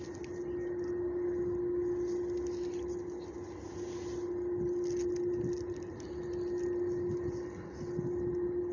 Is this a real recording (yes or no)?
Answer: yes